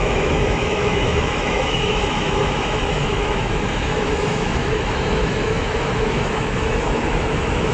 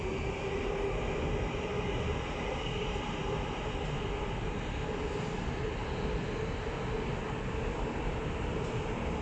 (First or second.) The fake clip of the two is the first